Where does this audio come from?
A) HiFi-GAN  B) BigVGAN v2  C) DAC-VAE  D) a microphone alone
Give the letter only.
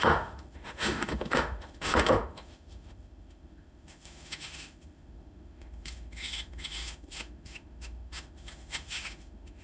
C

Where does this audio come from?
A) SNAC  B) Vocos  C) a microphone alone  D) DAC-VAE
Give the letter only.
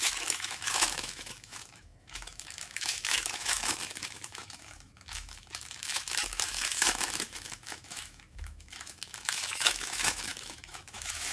D